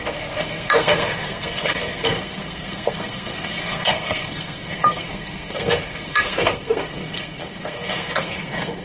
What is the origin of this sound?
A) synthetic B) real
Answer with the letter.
A